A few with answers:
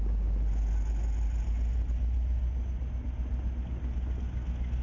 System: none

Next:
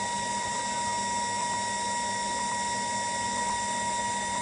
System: none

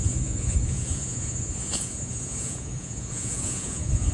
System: vocoder, Vocos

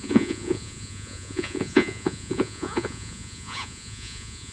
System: vocoder, Vocos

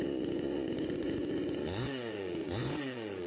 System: vocoder, Vocos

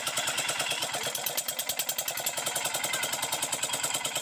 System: none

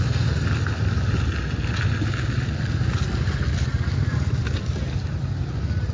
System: none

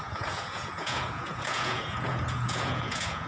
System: vocoder, Vocos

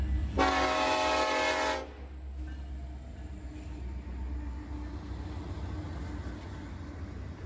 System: none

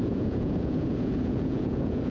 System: vocoder, Vocos